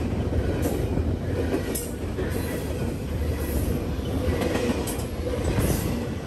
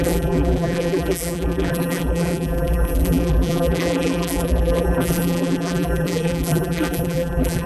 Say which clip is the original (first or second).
first